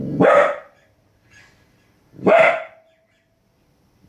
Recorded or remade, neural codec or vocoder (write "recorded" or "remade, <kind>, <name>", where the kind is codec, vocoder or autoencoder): recorded